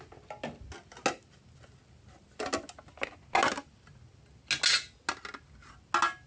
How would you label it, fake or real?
real